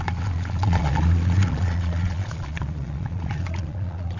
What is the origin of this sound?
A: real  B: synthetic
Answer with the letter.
B